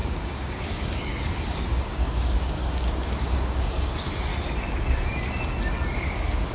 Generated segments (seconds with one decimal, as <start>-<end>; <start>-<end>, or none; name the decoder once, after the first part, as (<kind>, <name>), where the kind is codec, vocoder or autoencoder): 0.0-4.3 (codec, DAC); 6.0-6.5

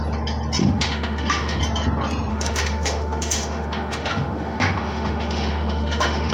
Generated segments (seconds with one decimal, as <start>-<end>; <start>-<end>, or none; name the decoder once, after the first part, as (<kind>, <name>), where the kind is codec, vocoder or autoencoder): 0.6-1.6 (autoencoder, DAC-VAE); 2.3-6.3

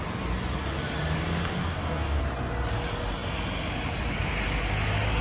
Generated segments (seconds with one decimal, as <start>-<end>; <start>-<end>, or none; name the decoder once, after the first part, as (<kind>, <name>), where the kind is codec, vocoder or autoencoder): 1.6-2.2 (codec, DAC)

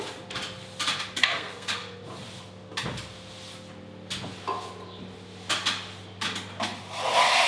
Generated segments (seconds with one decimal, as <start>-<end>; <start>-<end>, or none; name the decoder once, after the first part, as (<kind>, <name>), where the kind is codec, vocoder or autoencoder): 1.2-1.8 (codec, SNAC)

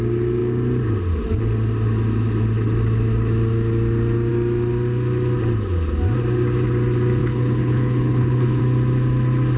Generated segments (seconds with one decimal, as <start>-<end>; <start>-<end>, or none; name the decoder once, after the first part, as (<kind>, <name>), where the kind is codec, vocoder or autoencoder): 7.2-8.6 (codec, HILCodec)

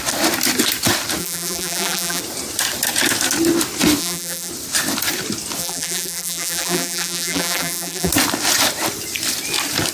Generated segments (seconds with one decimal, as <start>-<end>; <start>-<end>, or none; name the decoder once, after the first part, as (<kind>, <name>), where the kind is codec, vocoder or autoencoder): 1.2-2.2 (vocoder, BigVGAN v2); 4.0-4.5; 5.6-8.1

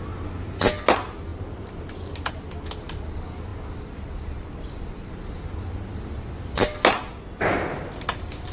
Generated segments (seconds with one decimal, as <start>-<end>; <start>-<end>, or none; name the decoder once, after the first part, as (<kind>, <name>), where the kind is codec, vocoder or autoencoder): none

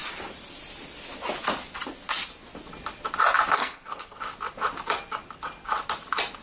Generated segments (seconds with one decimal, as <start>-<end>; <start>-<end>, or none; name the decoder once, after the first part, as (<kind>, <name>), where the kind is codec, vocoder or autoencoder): 3.6-4.2 (codec, SNAC)